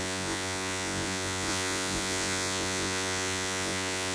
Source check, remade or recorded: remade